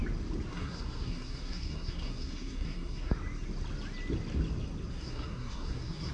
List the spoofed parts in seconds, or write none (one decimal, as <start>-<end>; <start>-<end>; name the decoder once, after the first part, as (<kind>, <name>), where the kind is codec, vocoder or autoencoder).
0.5-3.1 (codec, SNAC); 4.9-6.1